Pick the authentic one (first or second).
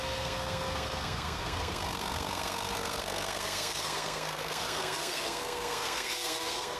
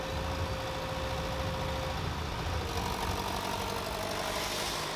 second